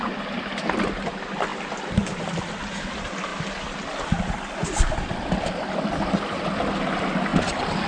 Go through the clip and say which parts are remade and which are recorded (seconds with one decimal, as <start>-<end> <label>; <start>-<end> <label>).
0.0-7.9 recorded